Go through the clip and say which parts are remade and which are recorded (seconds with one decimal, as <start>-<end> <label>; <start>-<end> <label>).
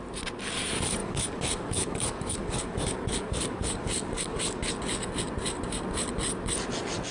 0.0-1.0 recorded; 1.0-4.7 remade; 4.7-7.1 recorded